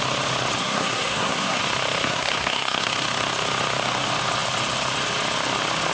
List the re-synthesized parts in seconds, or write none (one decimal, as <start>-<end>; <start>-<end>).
0.6-1.6; 2.0-2.9